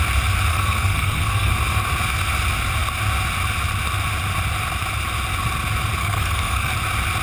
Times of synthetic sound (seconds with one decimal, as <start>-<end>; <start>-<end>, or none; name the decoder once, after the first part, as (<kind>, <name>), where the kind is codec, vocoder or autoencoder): 0.5-1.5 (codec, SNAC); 6.0-6.7